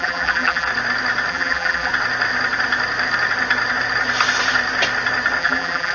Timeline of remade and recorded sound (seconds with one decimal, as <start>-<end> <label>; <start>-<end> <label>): 0.0-0.7 remade; 0.7-1.3 recorded; 1.3-1.9 remade; 1.9-5.4 recorded; 5.4-5.9 remade